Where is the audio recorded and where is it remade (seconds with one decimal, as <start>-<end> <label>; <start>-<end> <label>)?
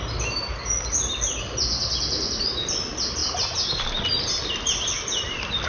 0.0-5.7 recorded